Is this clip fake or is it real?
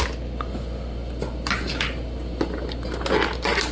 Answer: real